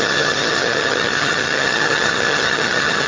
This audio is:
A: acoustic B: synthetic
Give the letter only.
B